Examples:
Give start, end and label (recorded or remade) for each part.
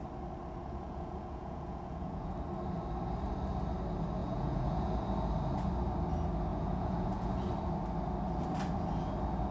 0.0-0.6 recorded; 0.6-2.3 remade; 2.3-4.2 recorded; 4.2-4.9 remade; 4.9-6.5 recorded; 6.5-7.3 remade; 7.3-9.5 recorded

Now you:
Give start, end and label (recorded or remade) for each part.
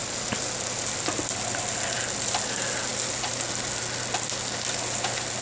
0.0-5.4 recorded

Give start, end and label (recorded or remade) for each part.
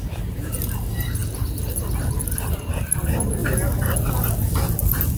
0.0-5.2 recorded